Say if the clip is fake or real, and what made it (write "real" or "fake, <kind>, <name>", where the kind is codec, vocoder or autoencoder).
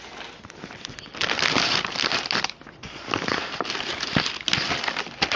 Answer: real